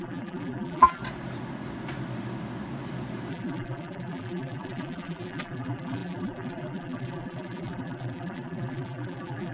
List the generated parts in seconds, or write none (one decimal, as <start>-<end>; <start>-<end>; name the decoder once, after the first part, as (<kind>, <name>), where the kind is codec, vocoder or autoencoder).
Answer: 0.0-1.0 (vocoder, BigVGAN v2); 3.3-9.5

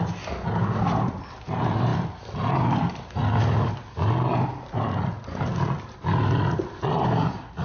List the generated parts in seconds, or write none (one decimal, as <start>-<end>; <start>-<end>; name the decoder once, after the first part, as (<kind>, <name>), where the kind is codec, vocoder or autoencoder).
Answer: 1.9-3.4 (vocoder, BigVGAN v2)

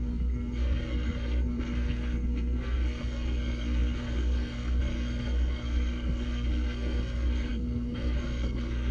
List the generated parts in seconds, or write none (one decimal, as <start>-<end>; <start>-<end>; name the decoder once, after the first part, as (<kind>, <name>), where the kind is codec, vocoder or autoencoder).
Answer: 0.0-8.9 (codec, SNAC)

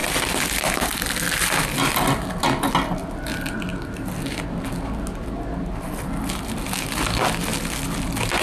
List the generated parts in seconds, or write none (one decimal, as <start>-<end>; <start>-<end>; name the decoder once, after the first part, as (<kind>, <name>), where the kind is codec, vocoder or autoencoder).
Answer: none

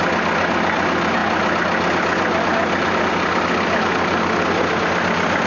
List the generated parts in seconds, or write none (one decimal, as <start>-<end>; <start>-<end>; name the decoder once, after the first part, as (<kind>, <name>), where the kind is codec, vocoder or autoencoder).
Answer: none

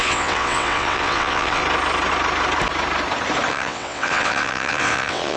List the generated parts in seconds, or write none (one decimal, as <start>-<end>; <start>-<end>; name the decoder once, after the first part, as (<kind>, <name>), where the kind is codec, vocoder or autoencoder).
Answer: 0.0-1.6 (vocoder, WaveNeXt); 3.5-5.4

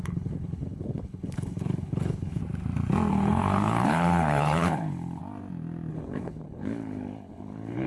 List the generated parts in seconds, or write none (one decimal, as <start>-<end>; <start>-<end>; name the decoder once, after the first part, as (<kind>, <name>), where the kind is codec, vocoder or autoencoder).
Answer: 0.0-2.4 (codec, HILCodec); 3.1-5.2; 5.9-7.9

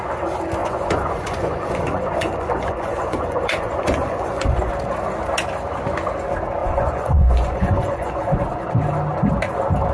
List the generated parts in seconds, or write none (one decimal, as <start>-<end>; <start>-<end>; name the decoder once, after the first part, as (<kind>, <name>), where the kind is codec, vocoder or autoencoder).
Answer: 0.6-4.7 (vocoder, Vocos); 6.6-8.7